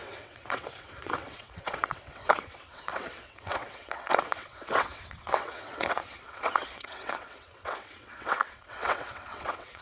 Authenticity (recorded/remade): remade